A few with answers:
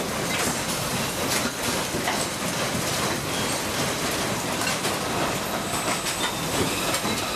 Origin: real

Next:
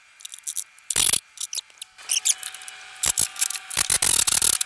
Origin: real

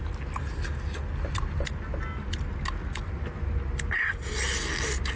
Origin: real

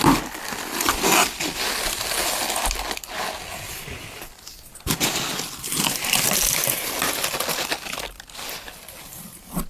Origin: real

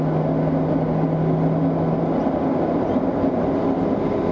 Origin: real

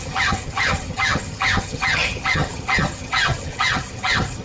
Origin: fake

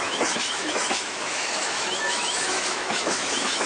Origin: fake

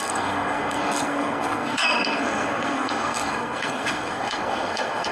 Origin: fake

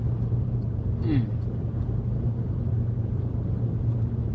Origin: real